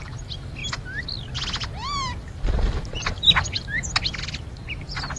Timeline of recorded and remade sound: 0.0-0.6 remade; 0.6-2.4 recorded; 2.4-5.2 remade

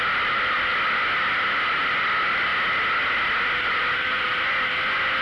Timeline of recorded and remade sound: 0.0-0.7 remade; 0.7-1.2 recorded; 1.2-2.5 remade; 2.5-3.1 recorded; 3.1-5.2 remade

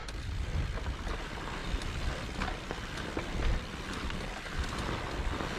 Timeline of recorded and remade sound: 0.0-0.6 remade; 0.6-1.6 recorded; 1.6-4.7 remade; 4.7-5.6 recorded

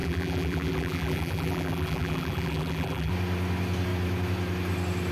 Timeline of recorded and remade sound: 0.0-3.1 remade; 3.1-5.1 recorded

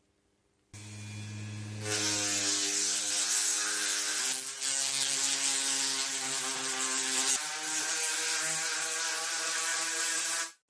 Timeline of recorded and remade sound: 0.0-9.7 recorded; 9.7-10.7 remade

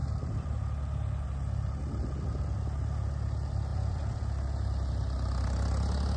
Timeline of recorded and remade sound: 0.0-3.7 recorded; 3.7-4.2 remade; 4.2-6.2 recorded

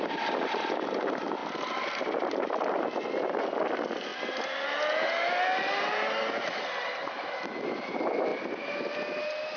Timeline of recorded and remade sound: 0.0-9.6 recorded

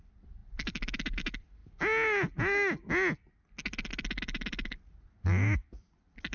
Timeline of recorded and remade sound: 0.0-6.3 recorded